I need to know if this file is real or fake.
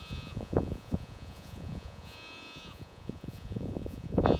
fake